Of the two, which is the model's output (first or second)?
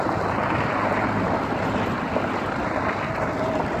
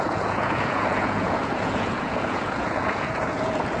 second